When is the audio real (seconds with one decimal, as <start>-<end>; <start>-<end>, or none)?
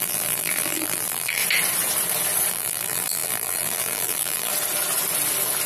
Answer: 1.4-2.5; 4.5-5.7